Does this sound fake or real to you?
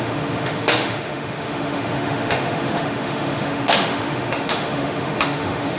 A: fake